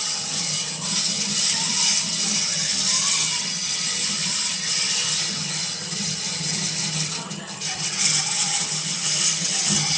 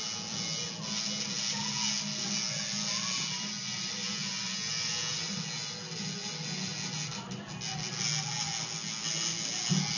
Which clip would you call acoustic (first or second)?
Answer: second